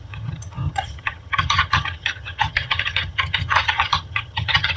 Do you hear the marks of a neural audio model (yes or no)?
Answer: yes